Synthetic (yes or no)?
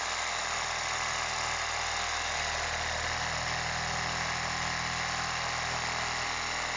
no